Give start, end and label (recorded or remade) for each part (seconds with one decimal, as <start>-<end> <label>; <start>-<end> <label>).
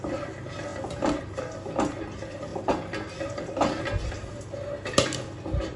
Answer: 0.0-5.8 recorded